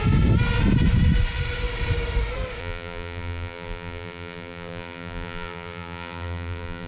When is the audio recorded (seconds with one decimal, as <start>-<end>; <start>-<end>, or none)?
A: 0.0-2.6